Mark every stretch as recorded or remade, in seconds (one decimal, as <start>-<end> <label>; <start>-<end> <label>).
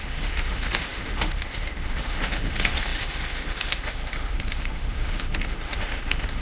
0.0-6.4 remade